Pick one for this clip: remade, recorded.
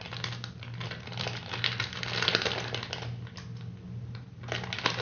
recorded